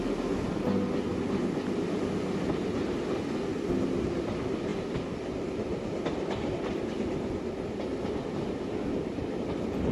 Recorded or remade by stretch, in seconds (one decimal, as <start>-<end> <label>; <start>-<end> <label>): 0.0-9.9 recorded